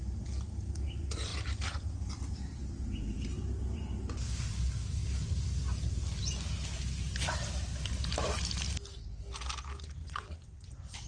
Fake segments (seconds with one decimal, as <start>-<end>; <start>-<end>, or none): 10.0-10.7